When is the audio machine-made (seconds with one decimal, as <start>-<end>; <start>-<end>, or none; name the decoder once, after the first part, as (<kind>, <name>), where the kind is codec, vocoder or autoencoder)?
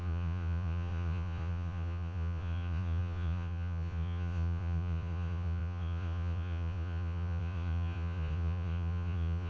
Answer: 0.0-9.5 (vocoder, Vocos)